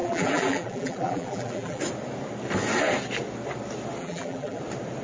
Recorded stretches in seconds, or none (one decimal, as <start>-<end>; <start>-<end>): 1.8-4.0; 4.6-5.0